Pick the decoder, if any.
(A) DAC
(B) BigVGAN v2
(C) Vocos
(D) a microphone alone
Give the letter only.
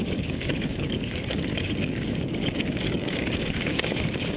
A